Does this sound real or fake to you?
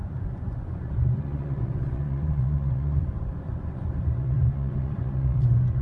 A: fake